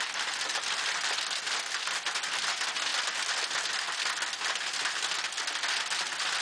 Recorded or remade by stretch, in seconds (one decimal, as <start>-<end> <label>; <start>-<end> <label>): 0.0-6.4 recorded

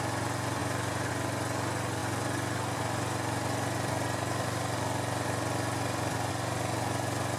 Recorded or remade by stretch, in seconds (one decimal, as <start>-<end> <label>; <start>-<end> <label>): 0.0-0.6 recorded; 0.6-1.1 remade; 1.1-7.4 recorded